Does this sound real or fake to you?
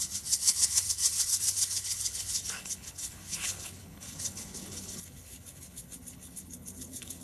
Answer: fake